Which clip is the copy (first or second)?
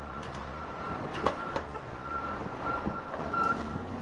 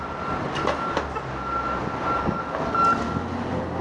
first